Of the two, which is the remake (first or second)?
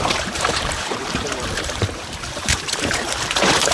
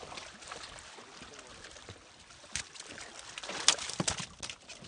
first